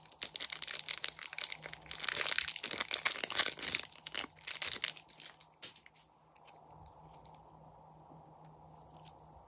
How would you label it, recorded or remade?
recorded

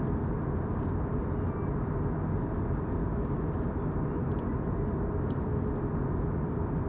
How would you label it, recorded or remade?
recorded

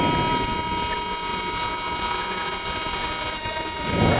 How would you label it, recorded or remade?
recorded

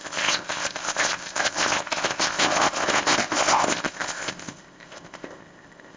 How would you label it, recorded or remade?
remade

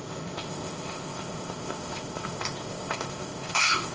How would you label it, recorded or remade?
remade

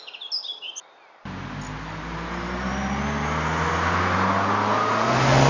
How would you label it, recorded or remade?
recorded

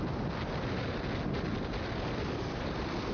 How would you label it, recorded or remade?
recorded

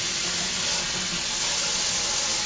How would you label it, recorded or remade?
recorded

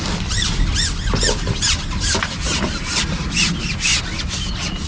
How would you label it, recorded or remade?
recorded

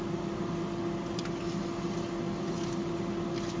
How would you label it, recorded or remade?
recorded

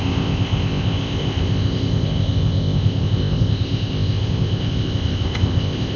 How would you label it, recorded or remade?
remade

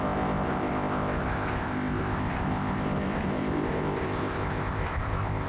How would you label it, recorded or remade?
remade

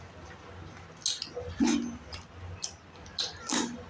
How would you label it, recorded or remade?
recorded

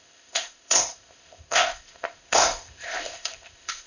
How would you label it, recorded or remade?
remade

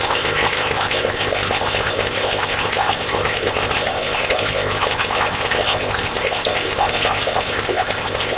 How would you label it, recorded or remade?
remade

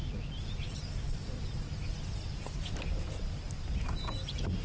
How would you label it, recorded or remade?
recorded